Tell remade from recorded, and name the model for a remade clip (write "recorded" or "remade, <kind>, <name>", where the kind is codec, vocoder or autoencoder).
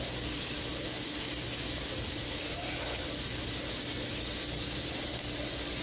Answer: recorded